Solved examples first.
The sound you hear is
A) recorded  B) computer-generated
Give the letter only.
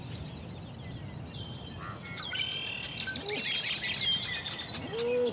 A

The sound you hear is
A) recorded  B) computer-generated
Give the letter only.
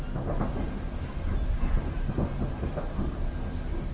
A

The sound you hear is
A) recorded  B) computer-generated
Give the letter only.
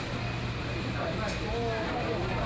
A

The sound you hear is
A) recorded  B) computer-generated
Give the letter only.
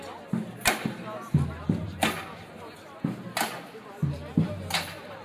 A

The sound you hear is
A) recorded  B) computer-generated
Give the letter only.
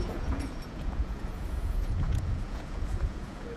B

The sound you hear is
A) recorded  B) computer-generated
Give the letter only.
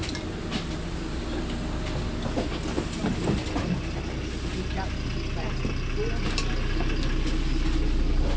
A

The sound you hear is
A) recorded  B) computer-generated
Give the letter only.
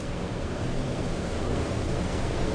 B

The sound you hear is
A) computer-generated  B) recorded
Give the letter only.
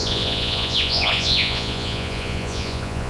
A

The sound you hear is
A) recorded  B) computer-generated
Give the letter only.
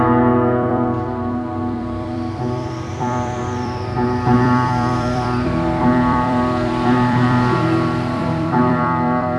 B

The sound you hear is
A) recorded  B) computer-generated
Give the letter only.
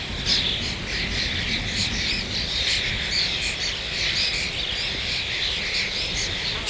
A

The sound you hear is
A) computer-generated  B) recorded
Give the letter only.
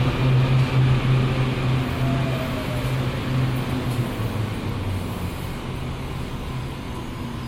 B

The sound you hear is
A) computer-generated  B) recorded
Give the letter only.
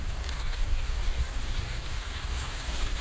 A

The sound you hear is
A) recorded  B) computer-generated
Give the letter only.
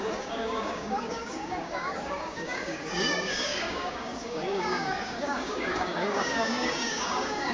B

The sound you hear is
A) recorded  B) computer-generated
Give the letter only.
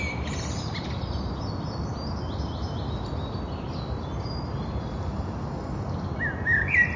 A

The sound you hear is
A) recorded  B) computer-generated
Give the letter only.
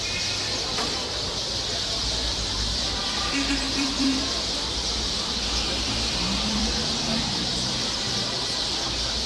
B